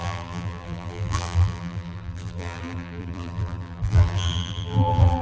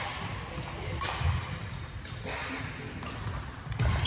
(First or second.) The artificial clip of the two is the first